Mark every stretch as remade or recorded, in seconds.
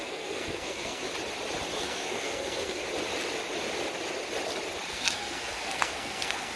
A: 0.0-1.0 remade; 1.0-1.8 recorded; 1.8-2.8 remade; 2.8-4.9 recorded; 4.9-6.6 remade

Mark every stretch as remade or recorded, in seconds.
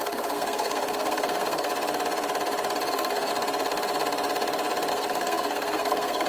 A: 0.0-1.7 remade; 1.7-2.9 recorded; 2.9-3.3 remade; 3.3-4.9 recorded; 4.9-6.3 remade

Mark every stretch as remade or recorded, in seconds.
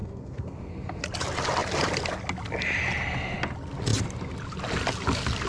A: 0.0-1.0 remade; 1.0-5.5 recorded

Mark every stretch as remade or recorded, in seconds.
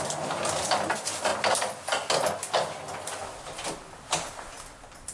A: 0.0-5.1 recorded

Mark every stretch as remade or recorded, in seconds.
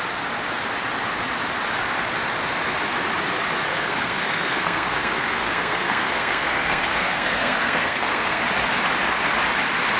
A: 0.0-3.7 recorded; 3.7-8.4 remade; 8.4-10.0 recorded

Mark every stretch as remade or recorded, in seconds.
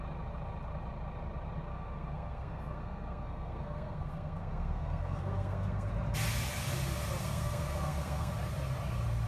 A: 0.0-1.7 recorded; 1.7-5.9 remade; 5.9-7.2 recorded; 7.2-8.3 remade; 8.3-9.3 recorded